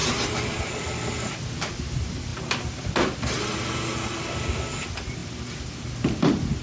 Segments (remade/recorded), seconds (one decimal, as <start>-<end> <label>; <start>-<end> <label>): 0.0-6.6 recorded